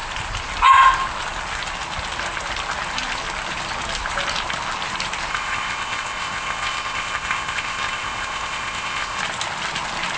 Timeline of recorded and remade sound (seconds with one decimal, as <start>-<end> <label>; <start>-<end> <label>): 0.0-5.3 recorded; 5.3-9.2 remade; 9.2-10.2 recorded